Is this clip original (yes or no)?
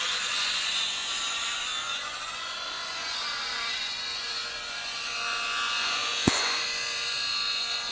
no